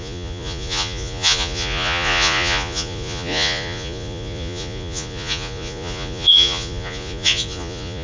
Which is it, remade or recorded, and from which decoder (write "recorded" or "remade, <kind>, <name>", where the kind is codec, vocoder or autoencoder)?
remade, vocoder, Vocos